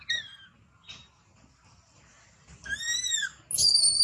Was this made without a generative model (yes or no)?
yes